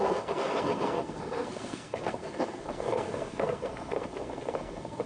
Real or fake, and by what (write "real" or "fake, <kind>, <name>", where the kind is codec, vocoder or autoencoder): fake, codec, SNAC